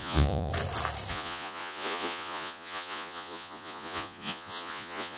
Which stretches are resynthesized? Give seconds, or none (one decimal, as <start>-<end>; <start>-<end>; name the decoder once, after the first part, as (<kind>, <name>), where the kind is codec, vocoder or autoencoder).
0.0-0.5 (vocoder, Vocos); 1.1-5.2